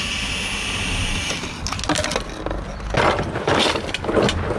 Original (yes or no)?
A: yes